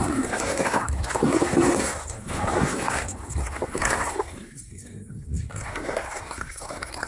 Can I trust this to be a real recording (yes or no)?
no